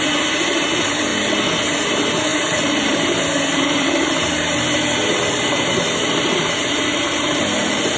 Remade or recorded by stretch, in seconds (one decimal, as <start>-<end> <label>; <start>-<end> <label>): 0.0-1.1 remade; 1.1-1.7 recorded; 1.7-8.0 remade